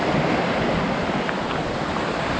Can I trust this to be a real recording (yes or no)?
yes